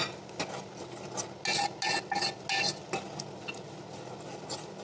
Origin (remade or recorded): recorded